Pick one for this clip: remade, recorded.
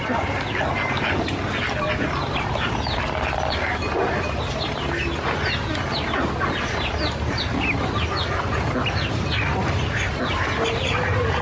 recorded